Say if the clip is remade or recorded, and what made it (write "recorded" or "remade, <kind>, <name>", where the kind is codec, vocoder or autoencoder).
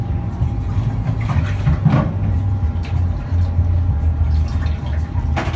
recorded